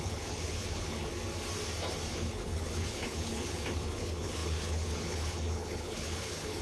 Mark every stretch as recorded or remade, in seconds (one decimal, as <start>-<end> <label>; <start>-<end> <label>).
0.0-1.1 remade; 1.1-2.1 recorded; 2.1-6.6 remade